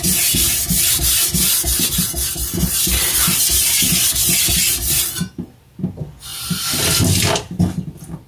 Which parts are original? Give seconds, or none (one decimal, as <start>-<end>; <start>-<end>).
0.0-8.3